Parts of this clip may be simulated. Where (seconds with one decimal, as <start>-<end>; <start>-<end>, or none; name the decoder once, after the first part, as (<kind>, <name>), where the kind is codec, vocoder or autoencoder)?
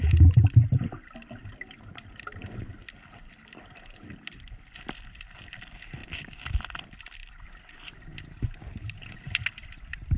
none